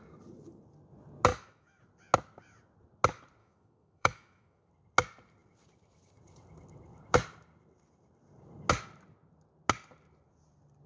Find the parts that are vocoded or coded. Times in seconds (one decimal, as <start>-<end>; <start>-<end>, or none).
1.3-1.8; 3.4-4.7

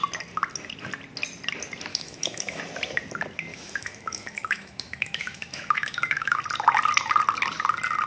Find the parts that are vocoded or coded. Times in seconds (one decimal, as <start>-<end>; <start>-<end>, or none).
1.9-2.6; 3.5-6.4

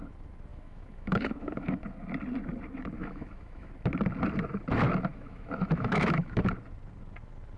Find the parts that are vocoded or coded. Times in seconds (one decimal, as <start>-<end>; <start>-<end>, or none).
0.5-1.8; 3.0-3.7; 5.1-6.4